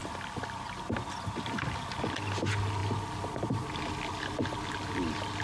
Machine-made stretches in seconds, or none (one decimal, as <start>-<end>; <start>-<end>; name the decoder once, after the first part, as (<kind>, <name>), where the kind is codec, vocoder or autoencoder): none